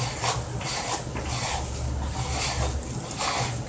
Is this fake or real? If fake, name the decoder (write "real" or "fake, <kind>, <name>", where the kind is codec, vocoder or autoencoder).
real